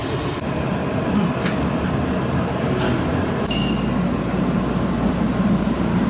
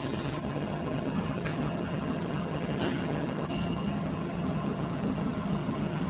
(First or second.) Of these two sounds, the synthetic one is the second